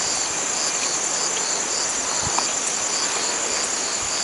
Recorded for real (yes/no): yes